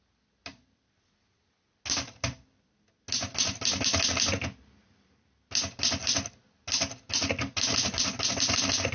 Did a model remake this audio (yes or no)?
no